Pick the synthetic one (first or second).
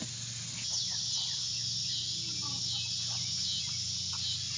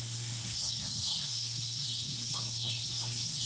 second